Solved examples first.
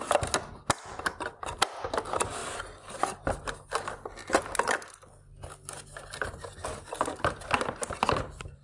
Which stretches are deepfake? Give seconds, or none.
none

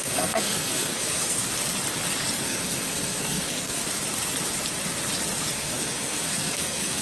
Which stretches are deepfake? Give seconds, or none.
0.0-1.4; 2.4-3.8; 5.5-7.0

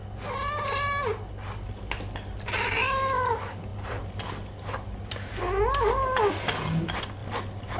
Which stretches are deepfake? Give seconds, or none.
none